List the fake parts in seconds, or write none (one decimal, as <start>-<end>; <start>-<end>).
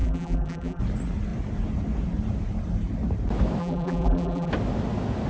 0.0-0.8; 3.6-4.5